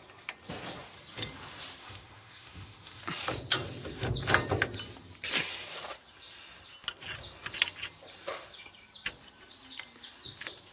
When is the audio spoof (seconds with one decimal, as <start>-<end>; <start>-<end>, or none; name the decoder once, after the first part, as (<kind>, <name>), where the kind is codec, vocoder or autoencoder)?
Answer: 1.8-3.0 (autoencoder, DAC-VAE)

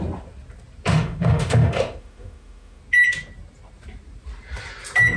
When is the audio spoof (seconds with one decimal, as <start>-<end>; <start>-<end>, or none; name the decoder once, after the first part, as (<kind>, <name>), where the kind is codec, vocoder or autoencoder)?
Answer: 0.9-2.8 (autoencoder, DAC-VAE)

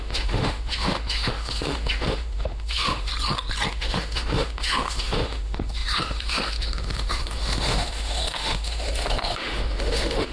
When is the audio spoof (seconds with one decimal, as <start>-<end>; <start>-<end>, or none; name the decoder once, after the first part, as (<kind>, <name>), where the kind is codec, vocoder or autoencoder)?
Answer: 0.0-3.1 (autoencoder, DAC-VAE); 3.7-10.3

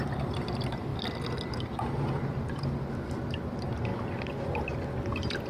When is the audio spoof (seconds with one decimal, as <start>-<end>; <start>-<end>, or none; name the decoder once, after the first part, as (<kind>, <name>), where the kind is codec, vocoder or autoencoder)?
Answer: none

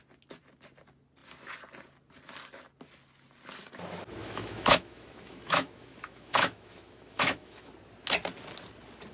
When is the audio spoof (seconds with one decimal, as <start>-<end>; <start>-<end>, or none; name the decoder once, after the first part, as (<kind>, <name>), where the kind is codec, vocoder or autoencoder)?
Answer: 4.2-7.7 (autoencoder, DAC-VAE)

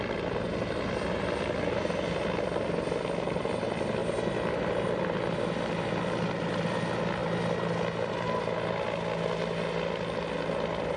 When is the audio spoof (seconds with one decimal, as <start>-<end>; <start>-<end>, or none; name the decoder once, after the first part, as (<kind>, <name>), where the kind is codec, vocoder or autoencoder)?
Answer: none